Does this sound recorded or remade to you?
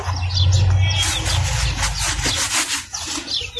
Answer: recorded